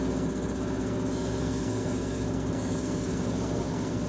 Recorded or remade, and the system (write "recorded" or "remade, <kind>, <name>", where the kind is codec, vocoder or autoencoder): remade, codec, SNAC